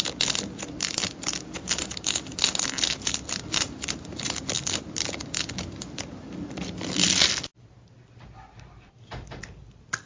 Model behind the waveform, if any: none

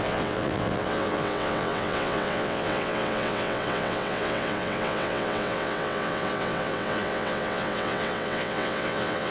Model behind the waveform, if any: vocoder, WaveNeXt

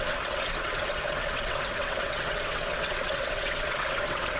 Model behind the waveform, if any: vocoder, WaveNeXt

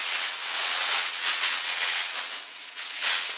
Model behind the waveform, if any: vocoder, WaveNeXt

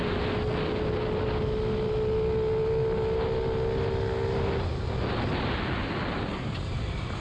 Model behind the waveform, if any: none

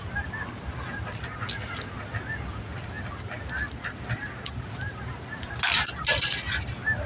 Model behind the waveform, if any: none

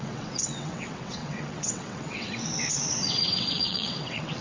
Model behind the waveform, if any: vocoder, WaveNeXt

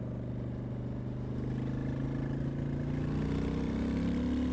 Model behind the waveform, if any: none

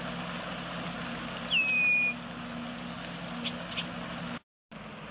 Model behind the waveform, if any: none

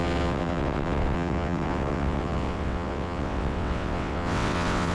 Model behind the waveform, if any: vocoder, WaveNeXt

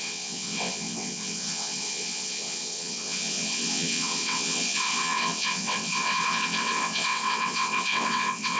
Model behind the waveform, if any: vocoder, WaveNeXt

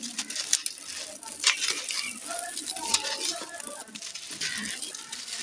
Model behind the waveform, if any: none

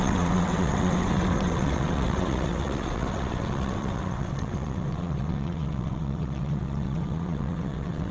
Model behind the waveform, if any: vocoder, WaveNeXt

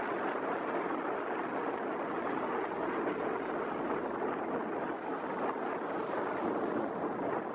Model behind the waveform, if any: none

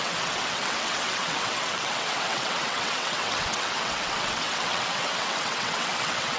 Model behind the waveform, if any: vocoder, WaveNeXt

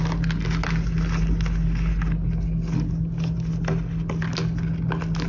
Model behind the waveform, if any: none